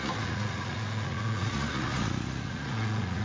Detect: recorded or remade remade